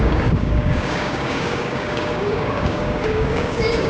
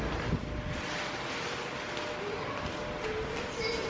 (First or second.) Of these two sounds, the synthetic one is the first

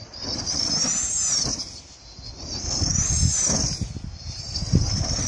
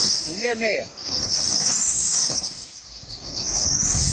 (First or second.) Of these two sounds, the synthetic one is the second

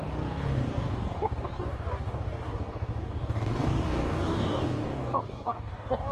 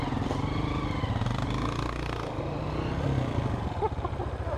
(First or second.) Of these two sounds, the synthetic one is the first